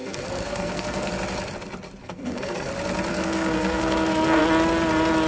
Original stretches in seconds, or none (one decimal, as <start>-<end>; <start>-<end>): 1.1-2.0; 2.7-3.1; 4.4-5.3